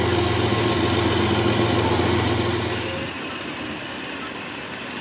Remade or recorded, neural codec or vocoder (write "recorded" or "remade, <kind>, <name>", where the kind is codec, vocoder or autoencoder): recorded